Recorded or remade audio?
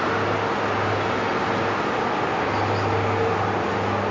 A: recorded